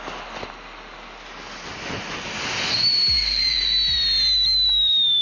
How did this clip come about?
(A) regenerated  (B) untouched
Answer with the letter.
B